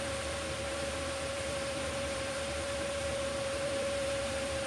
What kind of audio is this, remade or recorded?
remade